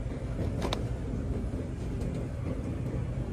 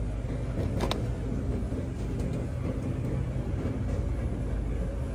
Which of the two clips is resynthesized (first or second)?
first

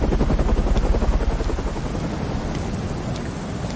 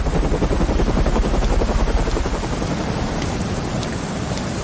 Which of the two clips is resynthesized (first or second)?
second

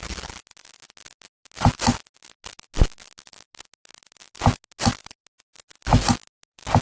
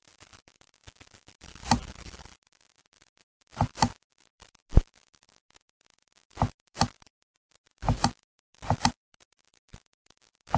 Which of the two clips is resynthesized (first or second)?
second